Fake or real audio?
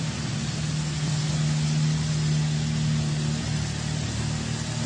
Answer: real